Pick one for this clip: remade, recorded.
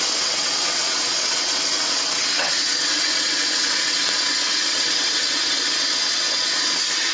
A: remade